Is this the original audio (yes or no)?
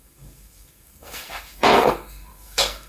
no